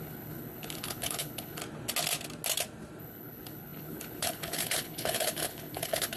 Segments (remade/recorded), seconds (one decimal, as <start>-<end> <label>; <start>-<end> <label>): 0.0-1.6 remade; 1.6-3.0 recorded; 3.0-6.2 remade